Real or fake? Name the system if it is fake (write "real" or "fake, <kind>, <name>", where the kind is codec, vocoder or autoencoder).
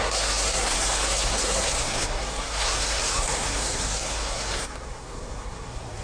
fake, codec, SNAC